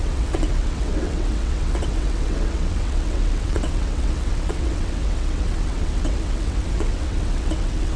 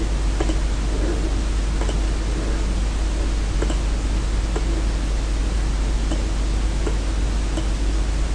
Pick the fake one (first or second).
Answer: first